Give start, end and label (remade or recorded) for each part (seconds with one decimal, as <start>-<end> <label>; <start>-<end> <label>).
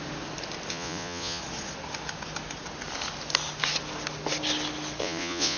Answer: 0.0-0.7 recorded; 0.7-1.4 remade; 1.4-5.0 recorded; 5.0-5.6 remade